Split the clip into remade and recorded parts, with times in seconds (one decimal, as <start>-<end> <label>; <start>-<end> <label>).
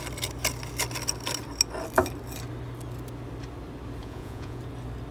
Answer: 0.0-4.0 recorded; 4.0-4.6 remade; 4.6-5.1 recorded